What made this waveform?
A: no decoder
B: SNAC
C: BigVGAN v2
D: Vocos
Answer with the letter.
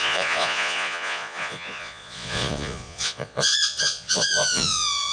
D